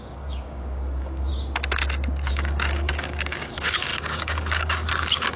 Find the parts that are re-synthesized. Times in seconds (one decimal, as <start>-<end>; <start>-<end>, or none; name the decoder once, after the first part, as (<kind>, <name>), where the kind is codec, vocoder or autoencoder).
0.0-1.3 (codec, DAC); 2.3-5.4